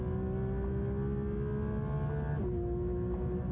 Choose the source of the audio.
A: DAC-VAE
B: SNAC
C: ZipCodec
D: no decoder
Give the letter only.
D